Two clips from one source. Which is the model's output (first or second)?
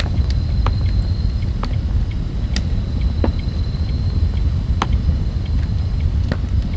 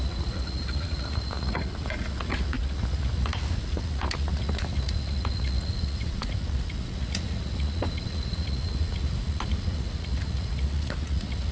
second